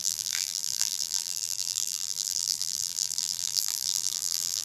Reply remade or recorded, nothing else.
remade